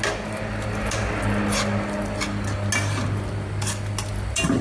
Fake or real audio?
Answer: real